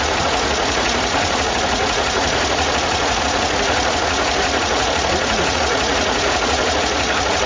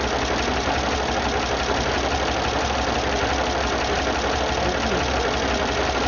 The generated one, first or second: first